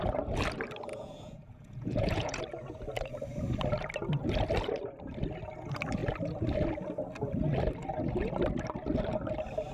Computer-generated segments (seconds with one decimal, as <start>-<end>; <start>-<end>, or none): 0.9-2.4